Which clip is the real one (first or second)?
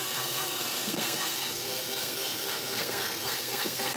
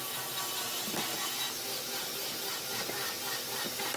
second